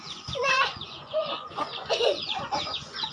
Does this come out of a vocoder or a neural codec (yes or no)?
yes